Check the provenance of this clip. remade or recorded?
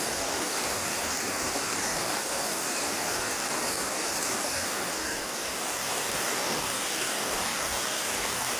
remade